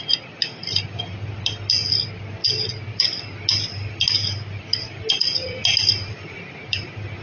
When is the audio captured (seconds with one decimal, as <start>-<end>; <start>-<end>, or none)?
0.0-2.4; 3.2-7.2

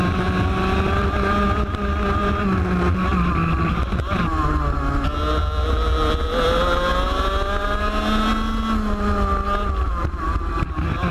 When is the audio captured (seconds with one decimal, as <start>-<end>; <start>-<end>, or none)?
0.0-11.1